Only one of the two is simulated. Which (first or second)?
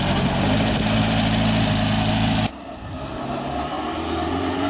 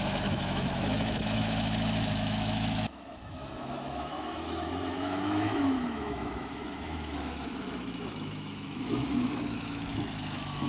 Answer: second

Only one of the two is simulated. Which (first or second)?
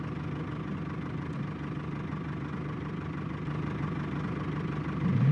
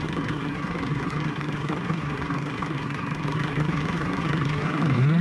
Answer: second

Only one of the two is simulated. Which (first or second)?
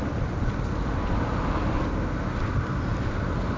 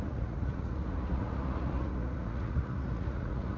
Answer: second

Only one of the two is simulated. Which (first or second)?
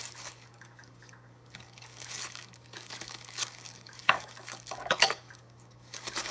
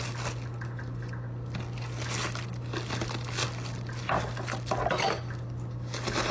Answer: first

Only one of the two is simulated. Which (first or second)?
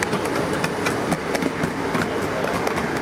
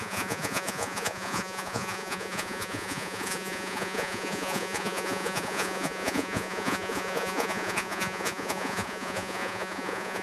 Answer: second